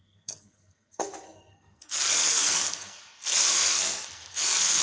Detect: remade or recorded remade